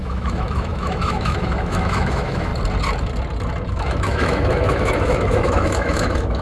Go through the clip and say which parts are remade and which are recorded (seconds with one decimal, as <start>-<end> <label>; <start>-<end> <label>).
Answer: 0.0-2.5 remade; 2.5-3.7 recorded; 3.7-6.4 remade